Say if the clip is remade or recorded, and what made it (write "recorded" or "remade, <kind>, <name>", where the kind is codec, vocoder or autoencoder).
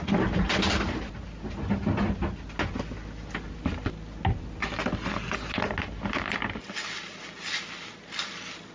recorded